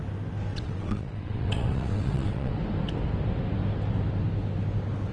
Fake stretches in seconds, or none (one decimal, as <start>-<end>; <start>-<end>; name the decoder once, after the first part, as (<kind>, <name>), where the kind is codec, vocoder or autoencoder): 0.5-2.5 (vocoder, WaveNeXt)